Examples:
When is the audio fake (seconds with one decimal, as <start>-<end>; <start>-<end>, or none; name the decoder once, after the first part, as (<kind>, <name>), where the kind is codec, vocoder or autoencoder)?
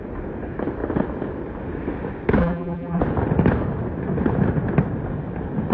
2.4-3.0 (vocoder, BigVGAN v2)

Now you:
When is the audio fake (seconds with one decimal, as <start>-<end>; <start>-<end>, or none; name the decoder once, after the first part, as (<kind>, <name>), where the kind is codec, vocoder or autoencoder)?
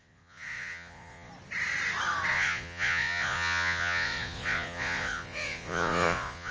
0.0-1.3 (vocoder, Vocos); 2.3-6.5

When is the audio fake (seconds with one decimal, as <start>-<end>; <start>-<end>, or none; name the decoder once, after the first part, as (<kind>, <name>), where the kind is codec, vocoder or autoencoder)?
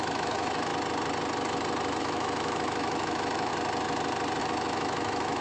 0.0-0.7 (autoencoder, DAC-VAE); 2.0-3.5; 4.4-5.4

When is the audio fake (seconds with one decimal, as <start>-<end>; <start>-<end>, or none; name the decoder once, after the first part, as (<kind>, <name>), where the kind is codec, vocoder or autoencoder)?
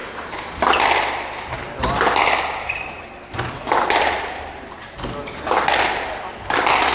none